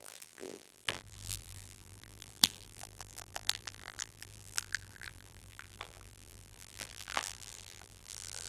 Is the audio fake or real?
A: fake